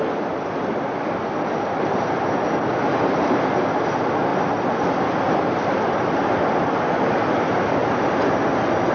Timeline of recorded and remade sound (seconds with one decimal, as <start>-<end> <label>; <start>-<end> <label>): 0.0-8.9 recorded